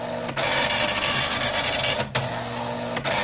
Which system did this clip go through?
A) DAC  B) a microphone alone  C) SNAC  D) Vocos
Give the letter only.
B